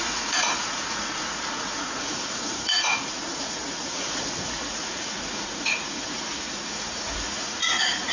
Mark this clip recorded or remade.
remade